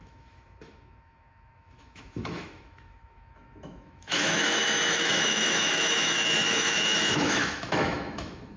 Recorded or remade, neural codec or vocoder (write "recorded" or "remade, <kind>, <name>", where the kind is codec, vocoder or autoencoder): remade, autoencoder, DAC-VAE